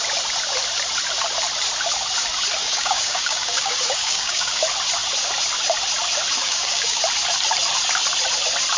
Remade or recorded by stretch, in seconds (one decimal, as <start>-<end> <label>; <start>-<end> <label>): 0.0-2.6 recorded; 2.6-4.6 remade; 4.6-6.4 recorded; 6.4-7.0 remade; 7.0-8.8 recorded